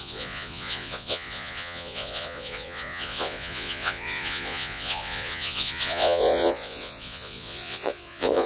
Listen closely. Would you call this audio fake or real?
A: fake